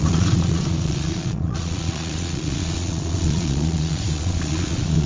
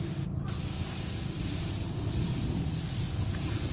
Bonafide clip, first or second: second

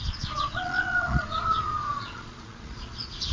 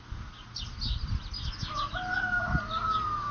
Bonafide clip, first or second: second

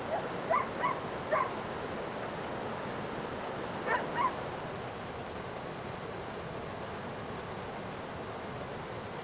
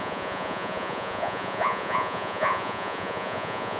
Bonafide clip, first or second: first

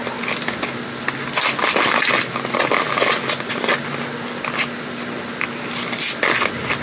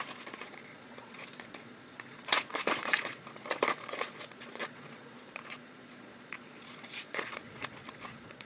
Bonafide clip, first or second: first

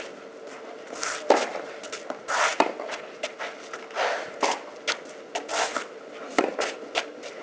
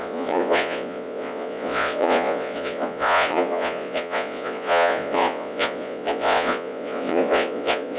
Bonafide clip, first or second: first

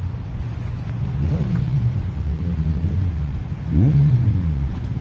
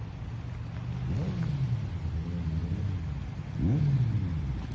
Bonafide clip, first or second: second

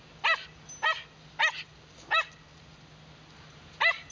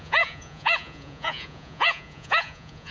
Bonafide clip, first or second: first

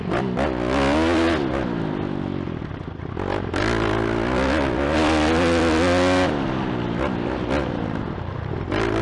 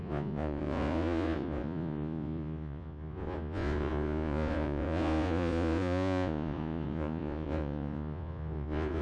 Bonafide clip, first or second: first